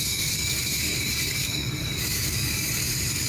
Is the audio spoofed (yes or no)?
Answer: yes